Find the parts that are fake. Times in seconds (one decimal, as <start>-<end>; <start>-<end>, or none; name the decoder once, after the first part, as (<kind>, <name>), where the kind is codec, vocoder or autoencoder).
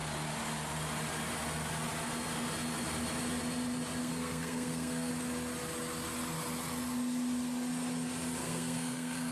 4.0-5.1 (codec, SNAC); 8.4-9.3